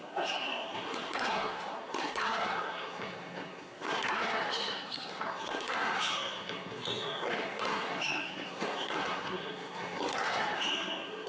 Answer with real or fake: fake